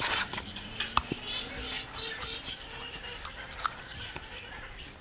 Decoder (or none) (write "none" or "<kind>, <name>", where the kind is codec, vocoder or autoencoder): none